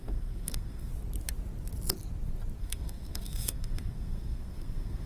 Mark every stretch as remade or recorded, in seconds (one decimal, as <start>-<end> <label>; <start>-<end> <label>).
0.0-0.9 remade; 0.9-2.6 recorded; 2.6-5.1 remade